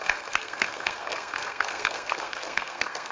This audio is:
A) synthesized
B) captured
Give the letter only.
A